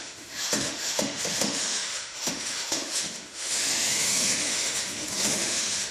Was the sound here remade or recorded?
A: remade